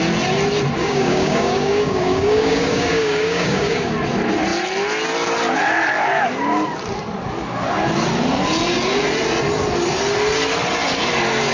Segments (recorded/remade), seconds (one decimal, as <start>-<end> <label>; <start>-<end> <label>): 0.0-0.8 recorded; 0.8-3.9 remade; 3.9-11.5 recorded